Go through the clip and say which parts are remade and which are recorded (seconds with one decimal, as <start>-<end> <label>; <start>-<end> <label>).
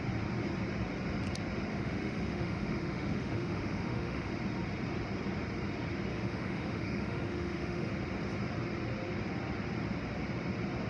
0.0-1.7 recorded; 1.7-4.3 remade; 4.3-6.1 recorded; 6.1-7.9 remade; 7.9-10.9 recorded